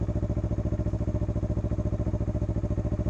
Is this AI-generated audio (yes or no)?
no